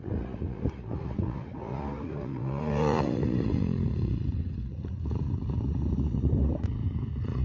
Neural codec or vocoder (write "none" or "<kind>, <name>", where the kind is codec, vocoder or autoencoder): vocoder, Vocos